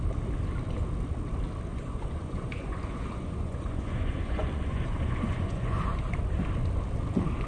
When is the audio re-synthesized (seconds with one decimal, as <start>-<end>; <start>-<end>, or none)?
1.7-6.2